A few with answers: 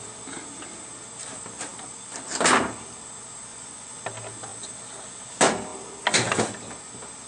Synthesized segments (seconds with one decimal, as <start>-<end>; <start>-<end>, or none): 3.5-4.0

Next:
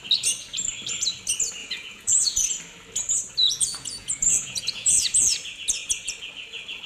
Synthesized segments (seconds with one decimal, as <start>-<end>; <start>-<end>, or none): 1.6-2.5; 3.4-5.3

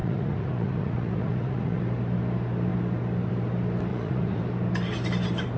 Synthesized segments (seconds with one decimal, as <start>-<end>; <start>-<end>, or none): 0.0-1.8; 3.9-4.4